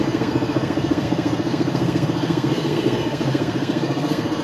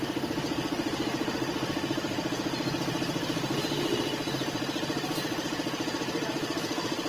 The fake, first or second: first